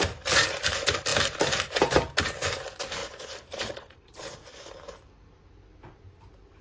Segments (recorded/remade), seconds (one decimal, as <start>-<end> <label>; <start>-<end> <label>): 0.0-3.0 recorded; 3.0-4.7 remade; 4.7-6.6 recorded